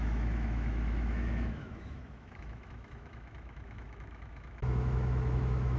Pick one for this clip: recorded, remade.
remade